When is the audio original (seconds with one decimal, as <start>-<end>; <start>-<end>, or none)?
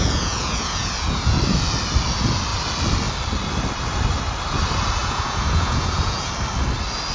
1.4-5.0; 6.3-7.1